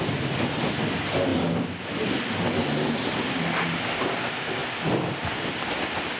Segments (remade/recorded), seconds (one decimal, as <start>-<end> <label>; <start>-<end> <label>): 0.0-6.2 recorded